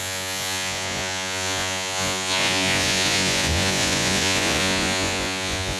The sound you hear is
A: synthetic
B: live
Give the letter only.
A